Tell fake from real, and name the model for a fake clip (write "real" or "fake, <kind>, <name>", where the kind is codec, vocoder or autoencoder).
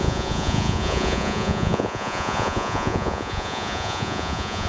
fake, vocoder, Vocos